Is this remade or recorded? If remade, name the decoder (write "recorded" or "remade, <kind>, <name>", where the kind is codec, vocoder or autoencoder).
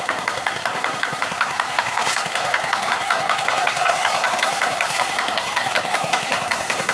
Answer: remade, codec, SNAC